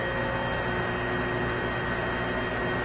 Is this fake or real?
real